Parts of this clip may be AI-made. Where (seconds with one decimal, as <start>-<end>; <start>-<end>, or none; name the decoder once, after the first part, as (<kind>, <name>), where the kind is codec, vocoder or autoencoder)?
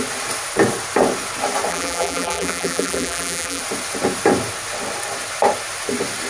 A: 1.7-3.6 (vocoder, BigVGAN v2)